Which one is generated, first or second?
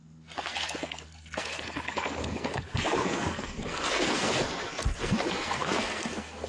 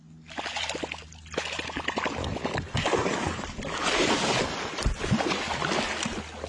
first